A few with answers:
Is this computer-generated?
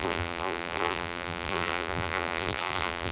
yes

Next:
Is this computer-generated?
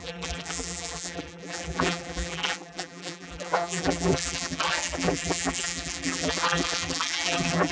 yes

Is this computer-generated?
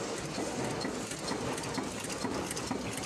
no